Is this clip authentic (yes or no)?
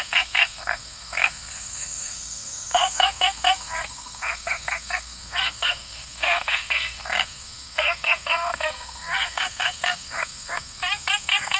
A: no